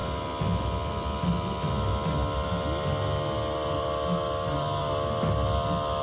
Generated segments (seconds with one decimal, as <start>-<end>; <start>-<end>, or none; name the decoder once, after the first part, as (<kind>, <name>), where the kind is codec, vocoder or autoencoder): none